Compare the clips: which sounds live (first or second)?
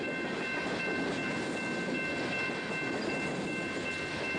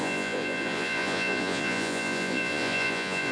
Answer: first